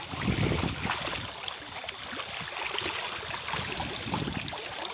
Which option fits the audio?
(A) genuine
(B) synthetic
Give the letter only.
A